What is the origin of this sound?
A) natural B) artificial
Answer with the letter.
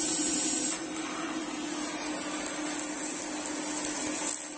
A